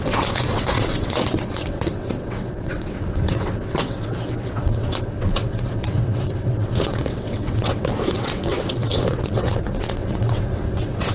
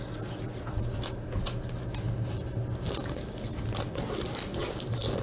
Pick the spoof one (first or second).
first